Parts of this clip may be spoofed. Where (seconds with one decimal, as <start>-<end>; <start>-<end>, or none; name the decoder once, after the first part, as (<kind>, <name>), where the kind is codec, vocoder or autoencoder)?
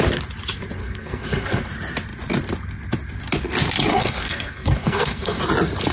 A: 0.8-1.7 (codec, SNAC); 3.9-5.4